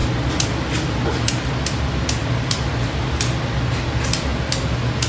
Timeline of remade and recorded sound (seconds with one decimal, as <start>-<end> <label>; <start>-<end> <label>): 0.0-5.1 recorded